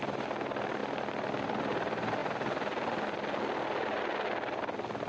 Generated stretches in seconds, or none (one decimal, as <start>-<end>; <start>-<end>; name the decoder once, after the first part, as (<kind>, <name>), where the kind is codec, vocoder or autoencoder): none